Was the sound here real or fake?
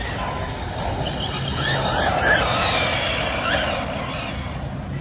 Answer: real